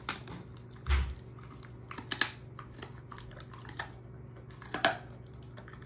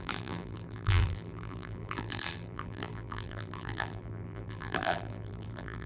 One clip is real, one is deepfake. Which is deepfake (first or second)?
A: second